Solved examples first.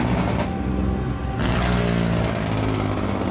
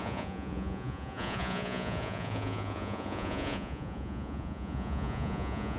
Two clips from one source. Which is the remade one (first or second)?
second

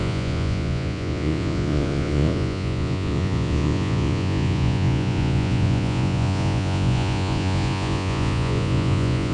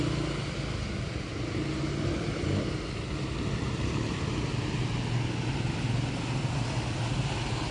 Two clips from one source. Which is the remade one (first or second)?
first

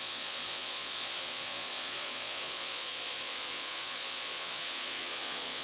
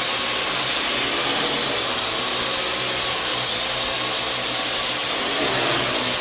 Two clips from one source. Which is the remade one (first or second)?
first